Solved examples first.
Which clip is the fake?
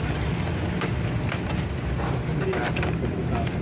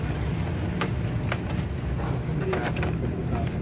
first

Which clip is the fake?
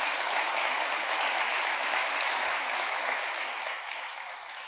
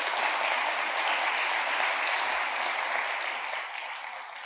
first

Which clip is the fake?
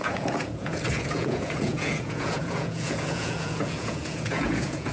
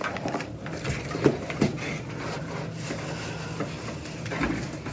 first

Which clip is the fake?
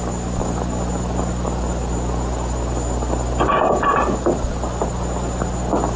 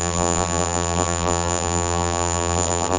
second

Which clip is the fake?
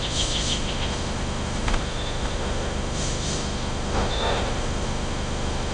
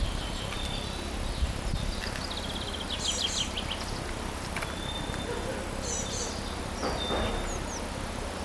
first